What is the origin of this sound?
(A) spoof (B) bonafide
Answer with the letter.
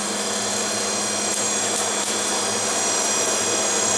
B